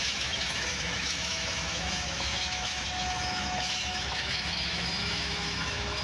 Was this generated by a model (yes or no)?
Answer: yes